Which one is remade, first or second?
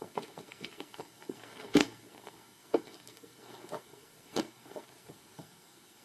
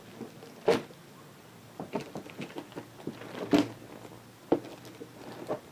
first